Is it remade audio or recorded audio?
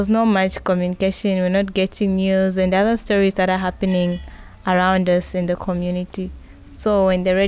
recorded